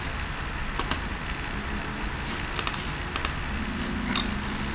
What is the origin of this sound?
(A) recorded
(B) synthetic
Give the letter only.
A